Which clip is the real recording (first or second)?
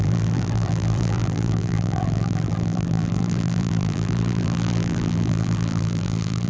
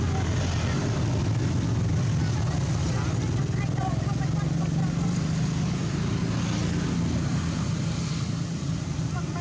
second